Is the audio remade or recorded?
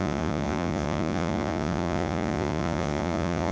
remade